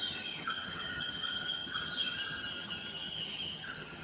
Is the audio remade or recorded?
remade